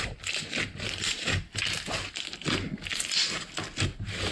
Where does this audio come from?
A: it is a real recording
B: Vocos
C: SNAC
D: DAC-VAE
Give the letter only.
A